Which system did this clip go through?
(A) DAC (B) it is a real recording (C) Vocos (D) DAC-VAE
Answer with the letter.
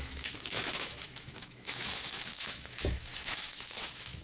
D